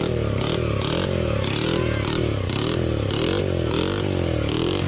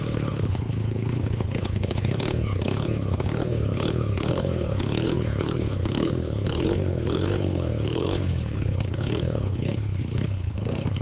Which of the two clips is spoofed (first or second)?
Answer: second